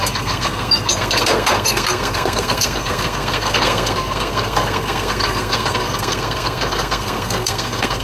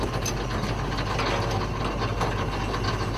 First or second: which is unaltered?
second